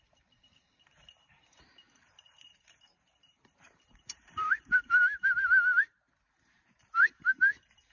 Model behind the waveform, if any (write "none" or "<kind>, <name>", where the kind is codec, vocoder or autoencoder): vocoder, BigVGAN v2